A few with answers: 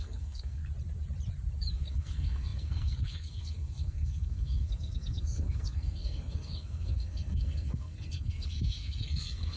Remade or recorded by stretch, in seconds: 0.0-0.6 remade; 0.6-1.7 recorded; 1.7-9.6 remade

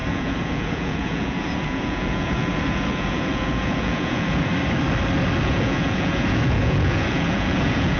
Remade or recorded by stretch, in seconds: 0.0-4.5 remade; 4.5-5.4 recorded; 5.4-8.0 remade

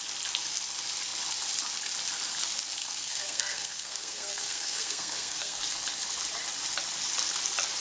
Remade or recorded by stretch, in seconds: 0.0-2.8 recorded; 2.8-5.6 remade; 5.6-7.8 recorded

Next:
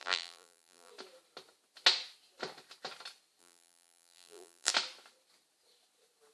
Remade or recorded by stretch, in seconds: 0.0-0.9 remade; 0.9-3.4 recorded; 3.4-4.7 remade; 4.7-6.3 recorded